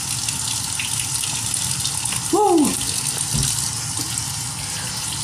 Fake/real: real